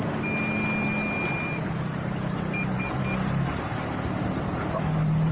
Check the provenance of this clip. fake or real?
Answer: real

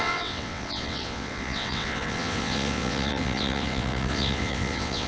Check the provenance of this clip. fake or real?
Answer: fake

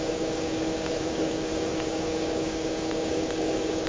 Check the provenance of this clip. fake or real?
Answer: fake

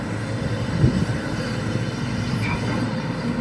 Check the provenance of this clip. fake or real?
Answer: real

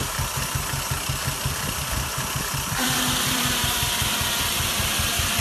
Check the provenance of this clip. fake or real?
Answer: fake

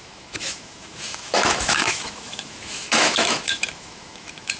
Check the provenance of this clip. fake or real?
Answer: fake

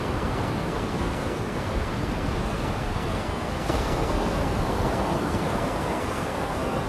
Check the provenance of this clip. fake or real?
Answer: fake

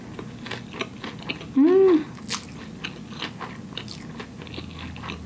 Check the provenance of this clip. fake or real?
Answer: real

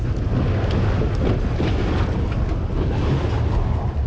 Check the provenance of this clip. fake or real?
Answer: real